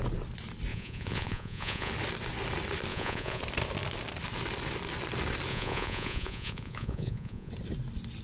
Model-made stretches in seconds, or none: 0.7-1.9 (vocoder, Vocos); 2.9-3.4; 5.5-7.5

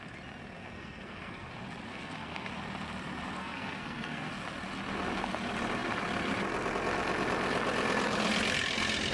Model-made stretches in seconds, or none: 0.6-1.5 (codec, SNAC); 1.9-2.5; 3.4-4.3

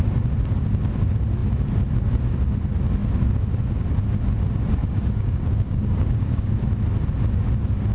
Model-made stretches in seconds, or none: 4.8-6.5 (codec, DAC)

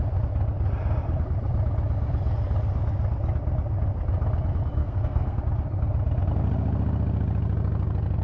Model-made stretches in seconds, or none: 4.8-5.4 (codec, SNAC)

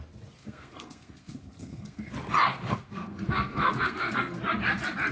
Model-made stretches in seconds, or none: 0.4-2.1 (codec, SNAC); 2.5-4.4

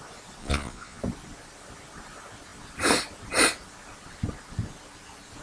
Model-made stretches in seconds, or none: 0.4-1.0 (vocoder, Vocos)

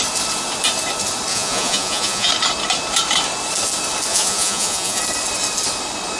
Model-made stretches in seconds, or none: 1.3-2.3 (vocoder, Vocos); 4.1-5.0

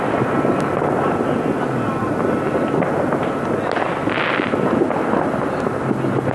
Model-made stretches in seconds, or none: none